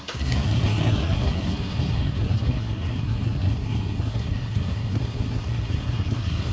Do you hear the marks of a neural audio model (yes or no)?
yes